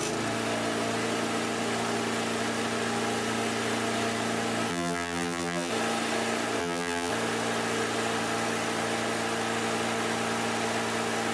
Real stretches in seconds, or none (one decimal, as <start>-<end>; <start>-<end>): 0.0-4.7; 5.7-6.6; 7.1-11.3